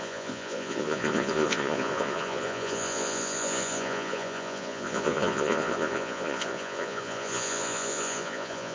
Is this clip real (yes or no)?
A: no